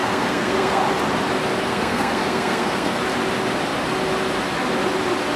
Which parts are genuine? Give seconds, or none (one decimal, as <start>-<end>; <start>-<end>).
0.8-1.7; 3.0-5.4